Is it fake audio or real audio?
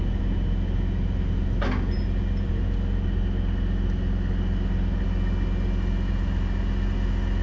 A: real